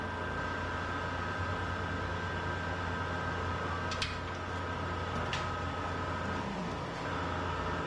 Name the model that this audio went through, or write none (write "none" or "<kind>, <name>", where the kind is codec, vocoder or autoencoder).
none